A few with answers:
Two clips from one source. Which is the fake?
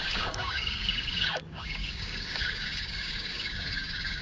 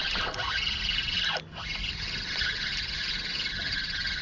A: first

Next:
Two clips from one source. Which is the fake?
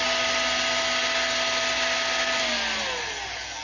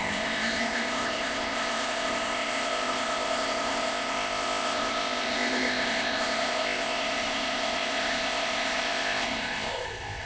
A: second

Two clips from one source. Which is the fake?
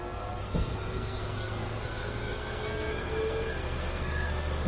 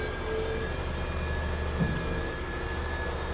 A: first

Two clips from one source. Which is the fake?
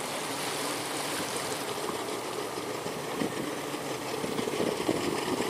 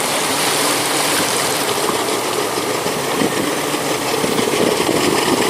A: second